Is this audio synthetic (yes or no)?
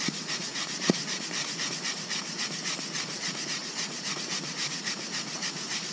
yes